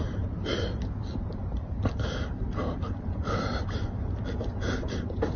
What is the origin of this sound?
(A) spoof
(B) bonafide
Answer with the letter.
A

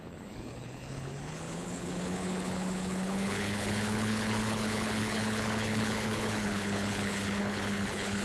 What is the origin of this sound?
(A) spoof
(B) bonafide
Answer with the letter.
A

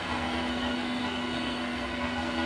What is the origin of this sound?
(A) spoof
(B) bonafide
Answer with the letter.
A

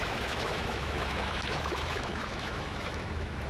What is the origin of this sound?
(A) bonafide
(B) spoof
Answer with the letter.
B